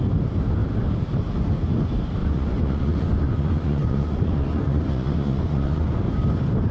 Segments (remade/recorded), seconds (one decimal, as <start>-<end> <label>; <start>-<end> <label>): 0.0-2.2 recorded; 2.2-6.0 remade; 6.0-6.7 recorded